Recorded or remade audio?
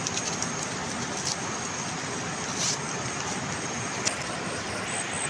recorded